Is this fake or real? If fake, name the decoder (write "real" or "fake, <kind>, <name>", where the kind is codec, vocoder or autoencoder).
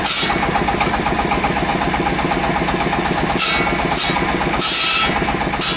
real